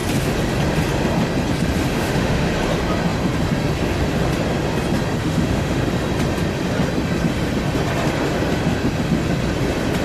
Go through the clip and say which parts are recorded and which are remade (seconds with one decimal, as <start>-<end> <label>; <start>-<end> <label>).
0.0-1.9 recorded; 1.9-2.5 remade; 2.5-5.2 recorded; 5.2-5.8 remade; 5.8-10.0 recorded